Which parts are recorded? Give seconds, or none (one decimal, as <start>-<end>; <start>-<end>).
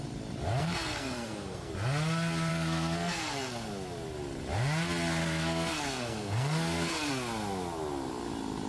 0.0-0.6; 1.7-2.5; 3.7-5.2; 7.1-8.7